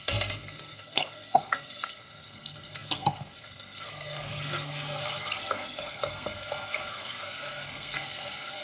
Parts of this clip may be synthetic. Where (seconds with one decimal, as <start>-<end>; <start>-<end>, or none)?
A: 0.0-8.6